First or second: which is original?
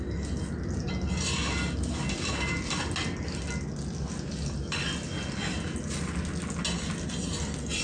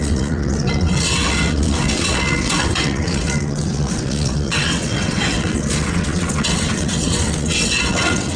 first